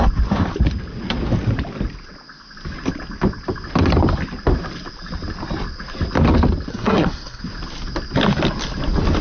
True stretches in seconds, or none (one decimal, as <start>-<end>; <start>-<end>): 0.0-6.7; 7.4-9.2